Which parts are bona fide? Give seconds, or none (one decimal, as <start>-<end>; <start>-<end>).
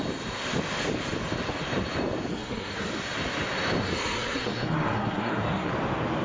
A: 0.0-2.3; 2.9-3.8; 5.7-6.2